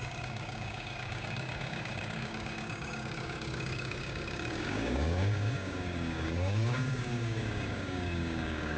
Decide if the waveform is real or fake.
fake